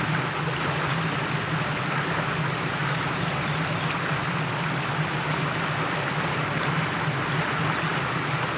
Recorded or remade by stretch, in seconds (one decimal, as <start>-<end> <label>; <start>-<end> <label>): 0.0-8.6 recorded